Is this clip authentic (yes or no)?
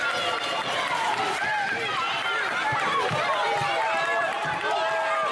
yes